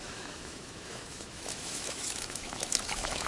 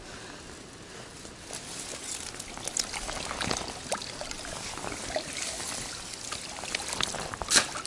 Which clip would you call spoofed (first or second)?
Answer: first